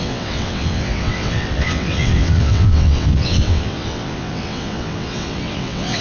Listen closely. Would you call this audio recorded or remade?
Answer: remade